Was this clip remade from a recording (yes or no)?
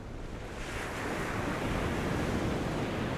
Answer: no